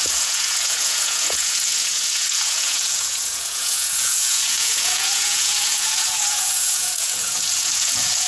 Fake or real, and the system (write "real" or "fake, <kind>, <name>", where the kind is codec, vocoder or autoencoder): fake, vocoder, Vocos